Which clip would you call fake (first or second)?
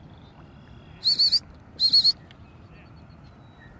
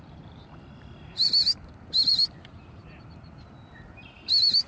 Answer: second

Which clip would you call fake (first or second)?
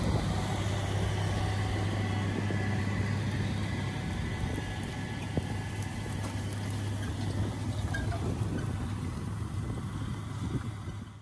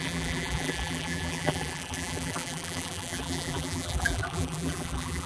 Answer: second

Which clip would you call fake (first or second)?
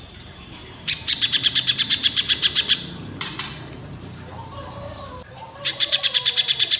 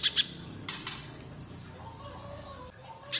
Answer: first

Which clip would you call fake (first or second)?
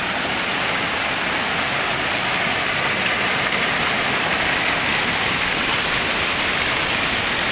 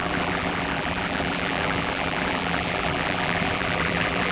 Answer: second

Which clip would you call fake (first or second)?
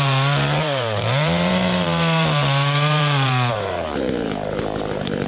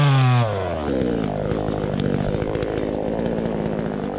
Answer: first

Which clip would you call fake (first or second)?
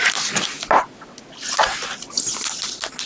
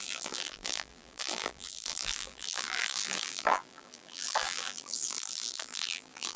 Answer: second